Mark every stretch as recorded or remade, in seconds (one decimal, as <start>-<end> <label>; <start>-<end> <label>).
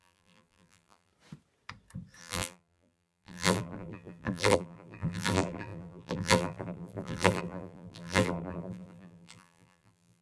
0.0-1.1 remade; 1.1-2.2 recorded; 2.2-10.2 remade